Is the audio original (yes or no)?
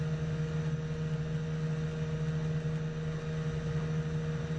yes